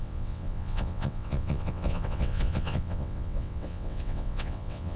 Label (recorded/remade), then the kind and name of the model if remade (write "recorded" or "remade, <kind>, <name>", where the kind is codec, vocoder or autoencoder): remade, vocoder, WaveNeXt